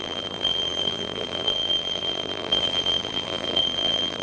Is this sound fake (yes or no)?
yes